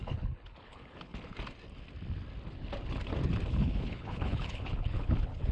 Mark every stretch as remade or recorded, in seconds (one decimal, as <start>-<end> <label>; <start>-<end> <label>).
0.0-1.1 remade; 1.1-3.5 recorded; 3.5-5.5 remade